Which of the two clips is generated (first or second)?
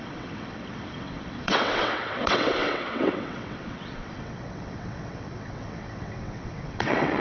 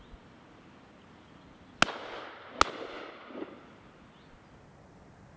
first